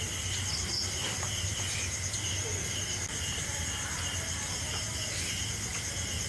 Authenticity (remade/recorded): recorded